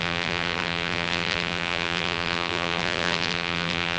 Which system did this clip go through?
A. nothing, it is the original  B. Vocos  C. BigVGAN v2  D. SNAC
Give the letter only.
C